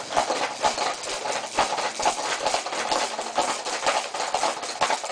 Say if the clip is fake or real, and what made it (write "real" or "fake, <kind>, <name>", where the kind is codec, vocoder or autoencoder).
real